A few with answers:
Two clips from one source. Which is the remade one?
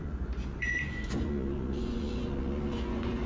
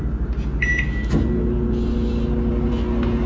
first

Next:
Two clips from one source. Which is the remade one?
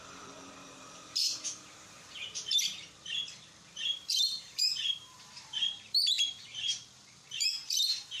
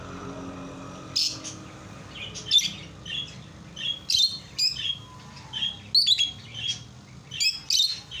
first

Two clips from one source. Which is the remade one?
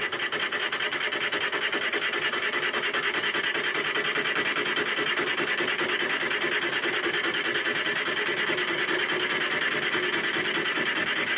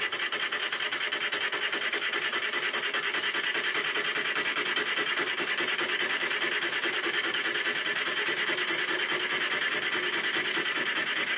second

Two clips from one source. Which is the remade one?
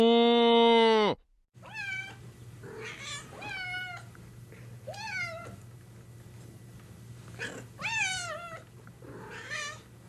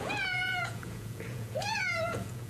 second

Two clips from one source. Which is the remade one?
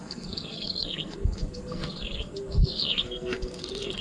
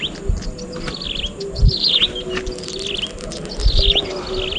first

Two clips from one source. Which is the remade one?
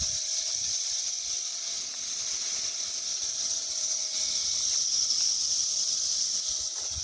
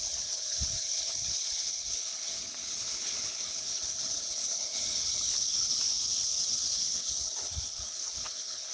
second